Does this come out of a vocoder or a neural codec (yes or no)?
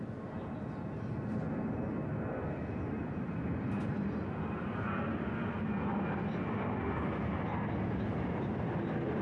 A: no